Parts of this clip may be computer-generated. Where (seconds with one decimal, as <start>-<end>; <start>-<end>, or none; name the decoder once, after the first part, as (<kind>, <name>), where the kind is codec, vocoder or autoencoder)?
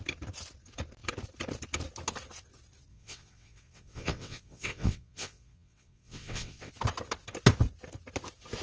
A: 2.9-6.7 (vocoder, WaveNeXt)